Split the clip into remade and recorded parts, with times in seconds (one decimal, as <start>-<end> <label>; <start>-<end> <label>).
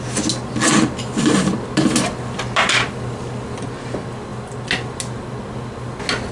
0.0-6.3 recorded